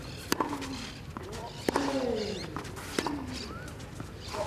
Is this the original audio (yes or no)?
yes